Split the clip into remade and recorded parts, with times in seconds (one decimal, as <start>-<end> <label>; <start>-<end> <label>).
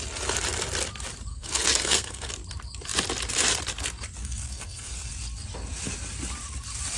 0.0-1.3 recorded; 1.3-2.3 remade; 2.3-4.2 recorded; 4.2-5.1 remade; 5.1-7.0 recorded